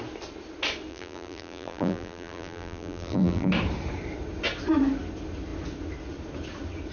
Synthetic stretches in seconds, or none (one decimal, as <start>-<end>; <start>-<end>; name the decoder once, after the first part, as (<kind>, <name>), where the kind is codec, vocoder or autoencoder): 0.9-3.5 (vocoder, BigVGAN v2)